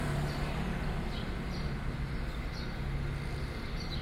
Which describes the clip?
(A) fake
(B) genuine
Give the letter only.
B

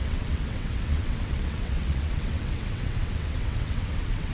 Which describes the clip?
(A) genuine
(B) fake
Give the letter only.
B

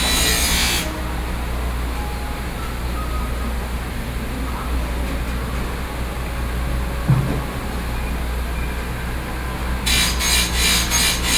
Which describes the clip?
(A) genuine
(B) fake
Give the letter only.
A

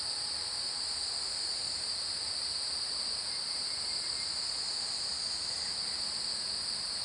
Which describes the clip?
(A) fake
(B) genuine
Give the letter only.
B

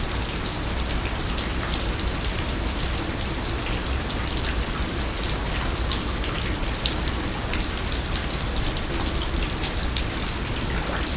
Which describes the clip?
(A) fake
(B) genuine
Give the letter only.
B